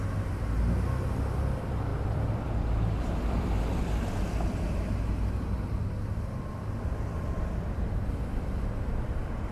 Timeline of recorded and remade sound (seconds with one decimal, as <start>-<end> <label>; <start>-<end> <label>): 0.0-1.9 recorded; 1.9-4.2 remade; 4.2-9.5 recorded